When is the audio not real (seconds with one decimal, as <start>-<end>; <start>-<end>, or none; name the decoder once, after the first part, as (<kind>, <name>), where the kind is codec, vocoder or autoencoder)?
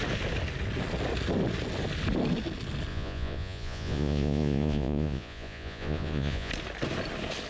2.9-6.5 (vocoder, Vocos)